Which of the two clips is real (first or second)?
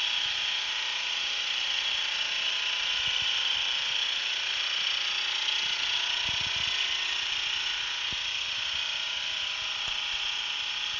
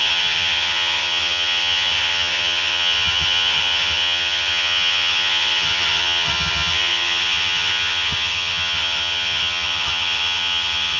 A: first